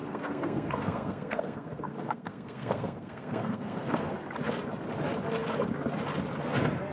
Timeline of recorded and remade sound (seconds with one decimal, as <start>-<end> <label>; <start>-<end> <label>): 0.0-4.1 remade; 4.1-6.9 recorded